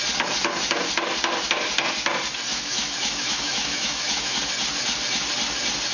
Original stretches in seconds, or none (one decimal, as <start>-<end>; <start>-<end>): 0.0-2.5; 4.4-5.9